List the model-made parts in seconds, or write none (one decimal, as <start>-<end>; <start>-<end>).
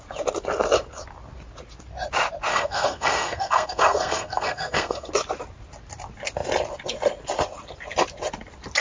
2.5-5.1